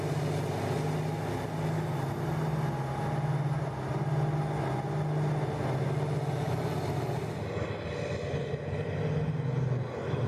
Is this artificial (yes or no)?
no